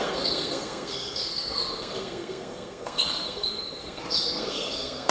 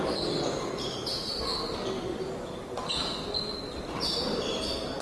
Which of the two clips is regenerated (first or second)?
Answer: first